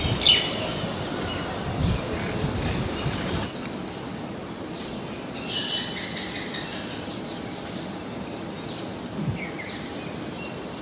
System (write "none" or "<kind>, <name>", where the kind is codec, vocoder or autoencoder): none